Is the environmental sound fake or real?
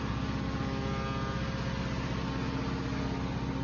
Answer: real